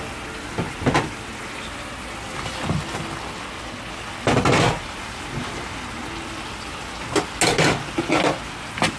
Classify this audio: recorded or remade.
recorded